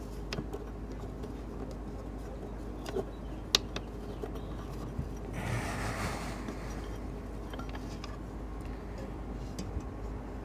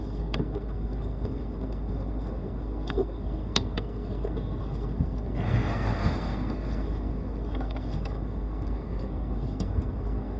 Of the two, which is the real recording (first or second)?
first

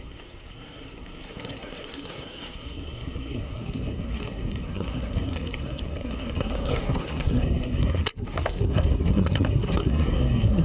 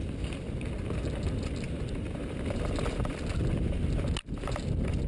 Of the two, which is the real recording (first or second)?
second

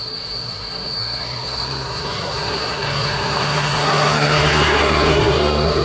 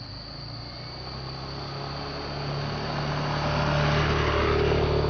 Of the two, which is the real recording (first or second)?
second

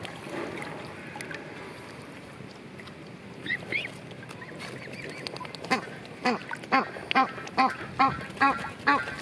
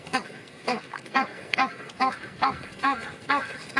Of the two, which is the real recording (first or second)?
first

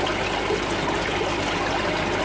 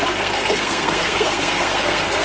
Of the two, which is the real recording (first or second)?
first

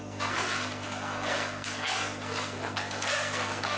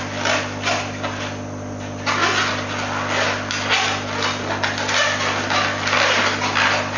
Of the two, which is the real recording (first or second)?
second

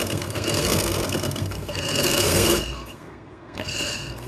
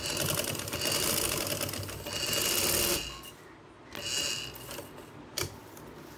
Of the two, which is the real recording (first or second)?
second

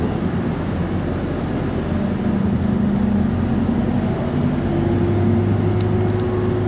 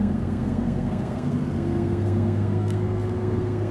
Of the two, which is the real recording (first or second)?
first